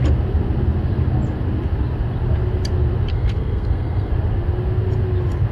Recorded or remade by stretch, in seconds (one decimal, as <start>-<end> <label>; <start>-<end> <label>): 0.0-3.1 recorded; 3.1-4.1 remade; 4.1-5.5 recorded